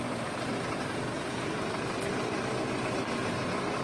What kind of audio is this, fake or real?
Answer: real